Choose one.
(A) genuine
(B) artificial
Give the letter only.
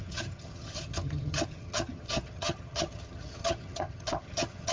B